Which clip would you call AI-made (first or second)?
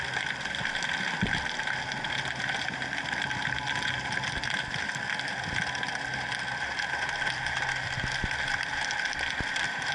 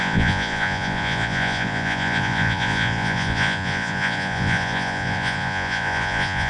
second